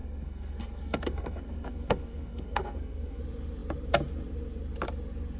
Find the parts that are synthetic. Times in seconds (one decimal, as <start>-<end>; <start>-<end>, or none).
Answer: 0.0-3.2